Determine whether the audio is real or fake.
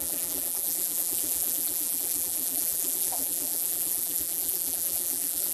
fake